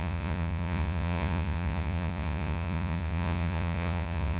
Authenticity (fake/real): fake